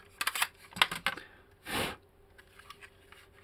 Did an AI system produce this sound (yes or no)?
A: no